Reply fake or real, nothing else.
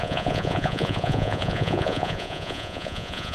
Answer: fake